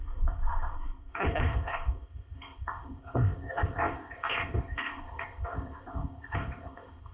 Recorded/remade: remade